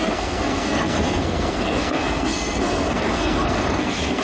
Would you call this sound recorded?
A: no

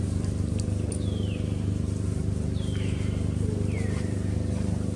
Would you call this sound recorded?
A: yes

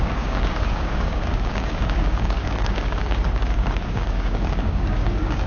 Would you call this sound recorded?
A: no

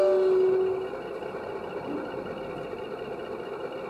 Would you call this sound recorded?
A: yes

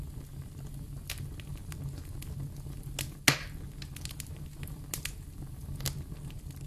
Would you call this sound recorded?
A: yes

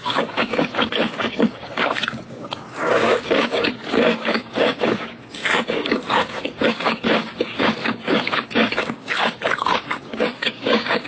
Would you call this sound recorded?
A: no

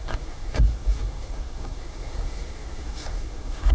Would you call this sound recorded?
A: no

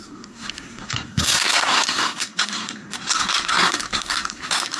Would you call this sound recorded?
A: no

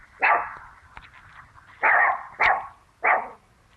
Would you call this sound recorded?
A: yes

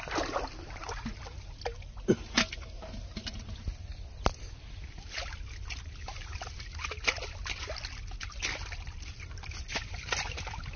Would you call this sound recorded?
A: yes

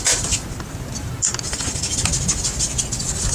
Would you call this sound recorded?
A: yes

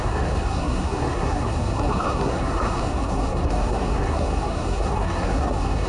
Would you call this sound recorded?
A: no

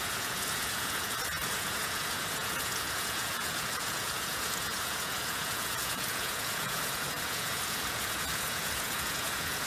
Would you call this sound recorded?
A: no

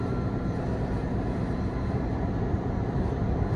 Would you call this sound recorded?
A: no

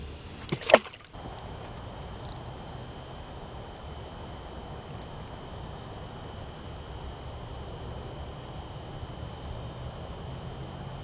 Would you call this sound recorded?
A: yes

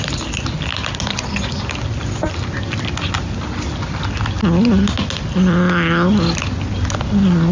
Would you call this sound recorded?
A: yes